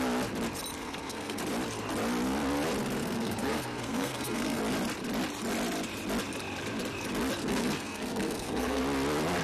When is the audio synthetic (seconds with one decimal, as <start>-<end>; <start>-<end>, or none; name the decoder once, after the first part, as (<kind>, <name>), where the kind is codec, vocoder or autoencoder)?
0.8-1.4 (codec, SNAC); 3.0-4.6; 7.4-8.8